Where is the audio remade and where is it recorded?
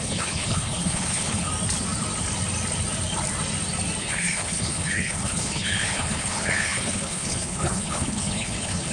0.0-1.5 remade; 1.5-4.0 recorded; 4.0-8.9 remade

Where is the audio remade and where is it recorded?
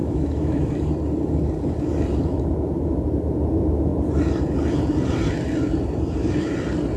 0.0-0.7 remade; 0.7-7.0 recorded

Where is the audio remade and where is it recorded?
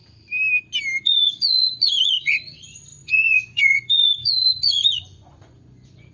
0.0-1.0 recorded; 1.0-6.1 remade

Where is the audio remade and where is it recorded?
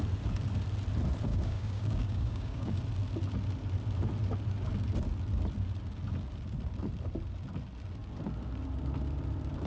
0.0-1.3 recorded; 1.3-2.8 remade; 2.8-9.7 recorded